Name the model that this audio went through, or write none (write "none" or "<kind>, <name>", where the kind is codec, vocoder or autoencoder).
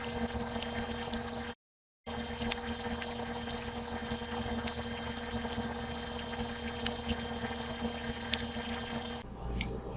none